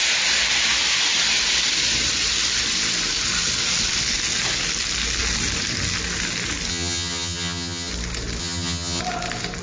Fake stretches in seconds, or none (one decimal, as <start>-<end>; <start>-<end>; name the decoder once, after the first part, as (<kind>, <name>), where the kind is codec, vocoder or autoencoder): 6.7-7.9 (vocoder, HiFi-GAN); 8.4-9.0